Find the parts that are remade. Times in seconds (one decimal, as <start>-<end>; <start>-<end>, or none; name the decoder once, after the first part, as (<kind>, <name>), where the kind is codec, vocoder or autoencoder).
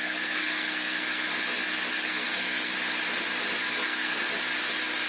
0.0-1.3 (codec, SNAC); 2.0-2.7; 3.7-4.2